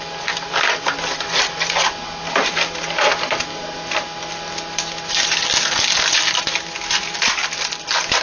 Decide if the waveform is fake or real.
real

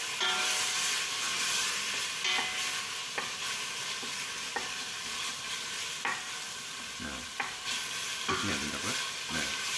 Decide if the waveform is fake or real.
real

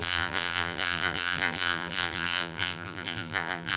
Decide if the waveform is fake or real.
fake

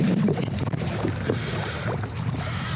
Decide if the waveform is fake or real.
fake